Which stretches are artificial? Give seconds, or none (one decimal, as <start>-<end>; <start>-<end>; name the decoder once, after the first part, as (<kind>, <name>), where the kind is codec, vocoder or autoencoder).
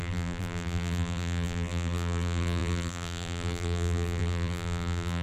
0.0-5.2 (vocoder, BigVGAN v2)